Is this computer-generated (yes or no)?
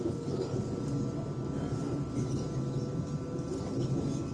no